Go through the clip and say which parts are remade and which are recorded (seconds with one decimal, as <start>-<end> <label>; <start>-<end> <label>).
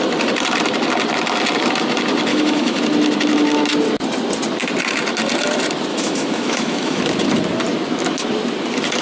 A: 0.0-2.3 recorded; 2.3-2.8 remade; 2.8-5.9 recorded; 5.9-7.0 remade; 7.0-9.0 recorded